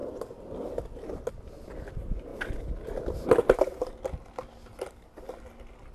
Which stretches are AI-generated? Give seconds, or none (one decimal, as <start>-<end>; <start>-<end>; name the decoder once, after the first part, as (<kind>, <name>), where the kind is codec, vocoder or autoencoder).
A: none